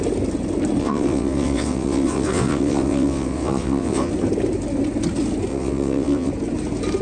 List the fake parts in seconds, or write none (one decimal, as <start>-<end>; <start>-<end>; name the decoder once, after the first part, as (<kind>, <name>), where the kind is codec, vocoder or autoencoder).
0.8-4.1 (vocoder, WaveNeXt); 5.5-6.3